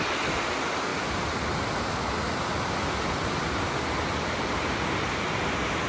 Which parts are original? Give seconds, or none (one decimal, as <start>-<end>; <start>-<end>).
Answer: 0.0-5.9